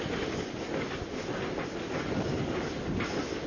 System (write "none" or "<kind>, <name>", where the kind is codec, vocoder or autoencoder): none